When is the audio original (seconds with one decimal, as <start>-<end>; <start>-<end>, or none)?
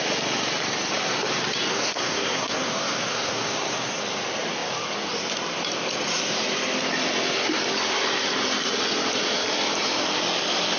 0.0-1.6; 4.0-10.8